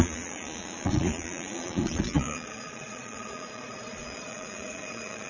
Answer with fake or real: fake